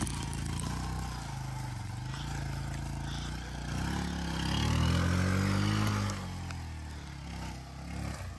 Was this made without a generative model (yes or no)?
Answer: yes